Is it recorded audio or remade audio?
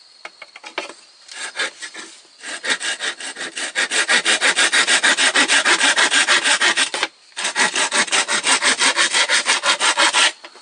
recorded